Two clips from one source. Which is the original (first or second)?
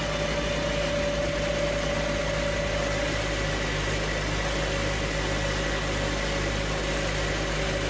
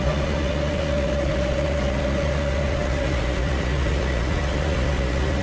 first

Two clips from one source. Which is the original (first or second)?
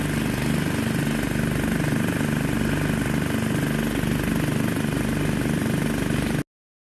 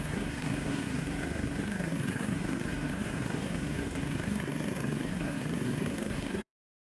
first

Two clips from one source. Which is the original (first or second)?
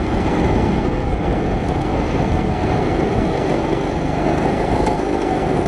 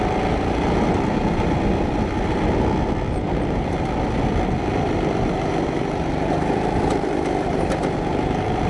second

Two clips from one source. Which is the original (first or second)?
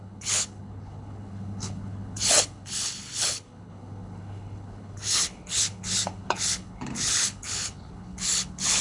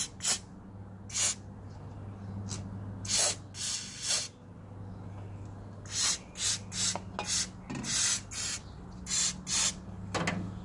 second